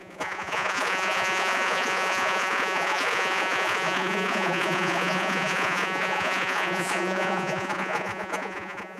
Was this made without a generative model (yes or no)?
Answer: no